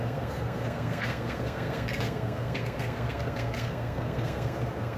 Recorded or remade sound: remade